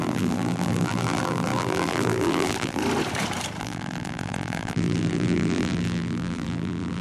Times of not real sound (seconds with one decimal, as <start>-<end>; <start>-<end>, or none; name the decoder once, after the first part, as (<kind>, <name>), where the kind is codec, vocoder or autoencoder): 0.0-2.8 (vocoder, BigVGAN v2); 3.6-7.0